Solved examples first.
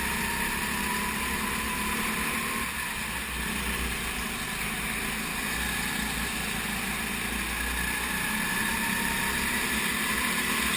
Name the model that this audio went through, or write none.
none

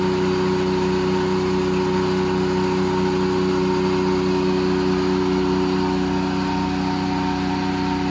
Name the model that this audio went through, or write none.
none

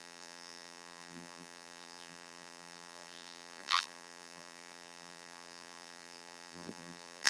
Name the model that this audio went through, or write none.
vocoder, BigVGAN v2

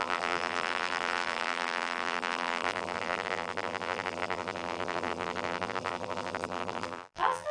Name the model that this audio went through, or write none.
vocoder, BigVGAN v2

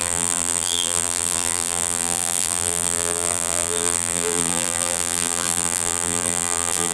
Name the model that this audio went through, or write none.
vocoder, BigVGAN v2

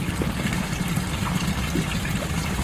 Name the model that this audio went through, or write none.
none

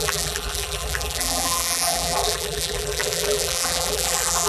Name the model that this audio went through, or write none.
vocoder, BigVGAN v2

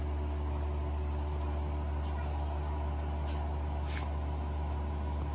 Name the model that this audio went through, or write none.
none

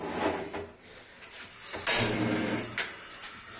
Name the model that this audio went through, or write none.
none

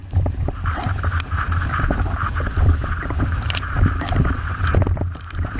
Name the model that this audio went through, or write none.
vocoder, BigVGAN v2